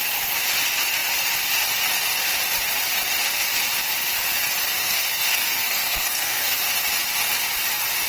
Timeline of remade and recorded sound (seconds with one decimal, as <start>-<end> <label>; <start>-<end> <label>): 0.0-4.8 recorded; 4.8-6.6 remade; 6.6-8.1 recorded